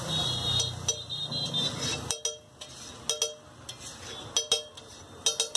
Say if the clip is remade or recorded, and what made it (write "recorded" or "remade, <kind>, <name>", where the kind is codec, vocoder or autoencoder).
recorded